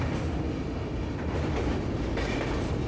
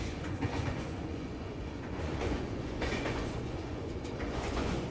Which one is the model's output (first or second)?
second